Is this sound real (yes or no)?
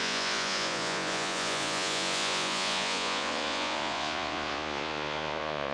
no